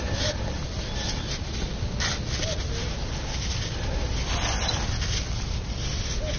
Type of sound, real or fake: real